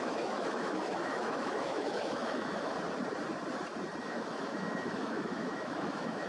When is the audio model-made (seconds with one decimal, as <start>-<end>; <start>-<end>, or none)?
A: 0.0-2.7; 4.0-6.3